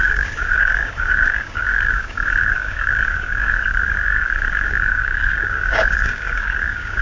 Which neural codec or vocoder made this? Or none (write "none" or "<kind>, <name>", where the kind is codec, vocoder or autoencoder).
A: codec, DAC